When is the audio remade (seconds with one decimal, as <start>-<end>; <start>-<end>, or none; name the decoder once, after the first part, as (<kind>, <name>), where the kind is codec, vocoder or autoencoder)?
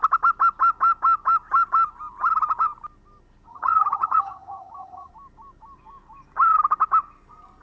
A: 3.5-5.1 (vocoder, HiFi-GAN)